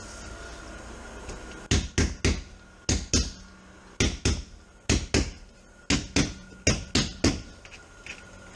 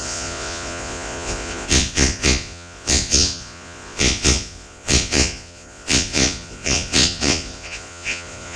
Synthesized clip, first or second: second